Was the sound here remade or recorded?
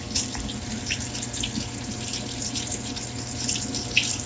recorded